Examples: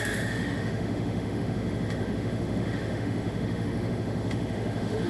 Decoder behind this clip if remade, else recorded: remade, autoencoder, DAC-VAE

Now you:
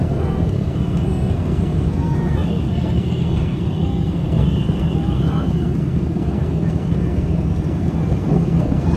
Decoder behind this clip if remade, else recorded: remade, codec, SNAC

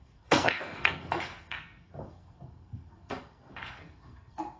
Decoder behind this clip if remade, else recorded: remade, codec, SNAC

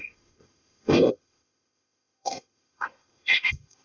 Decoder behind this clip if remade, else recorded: remade, codec, ZipCodec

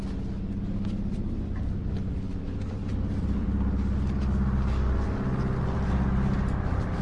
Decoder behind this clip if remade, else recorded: remade, vocoder, BigVGAN v2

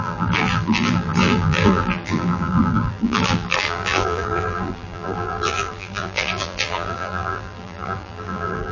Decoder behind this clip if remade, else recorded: remade, vocoder, BigVGAN v2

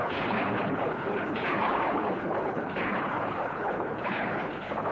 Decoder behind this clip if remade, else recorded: remade, codec, HILCodec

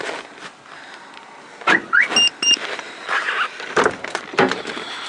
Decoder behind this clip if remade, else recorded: recorded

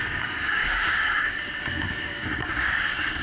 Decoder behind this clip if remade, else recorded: remade, codec, DAC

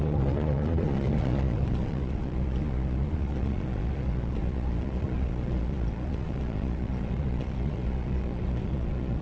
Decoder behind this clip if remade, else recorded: remade, vocoder, Vocos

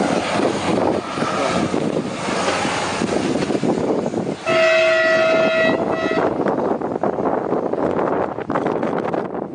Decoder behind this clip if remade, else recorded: recorded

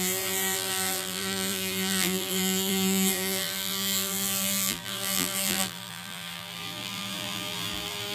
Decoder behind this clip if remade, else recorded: remade, vocoder, BigVGAN v2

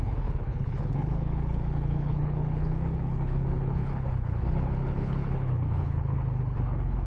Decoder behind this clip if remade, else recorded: remade, codec, HILCodec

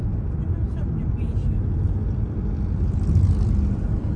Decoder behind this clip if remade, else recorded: recorded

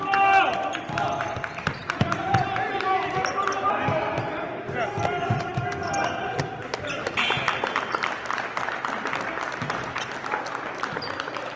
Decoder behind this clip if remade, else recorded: recorded